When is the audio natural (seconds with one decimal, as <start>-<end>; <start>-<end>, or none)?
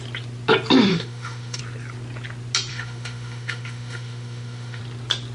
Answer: 0.0-0.9; 1.6-2.7; 4.8-5.3